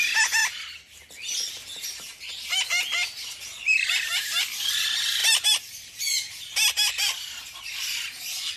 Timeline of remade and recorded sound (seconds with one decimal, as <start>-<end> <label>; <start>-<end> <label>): 0.0-8.6 recorded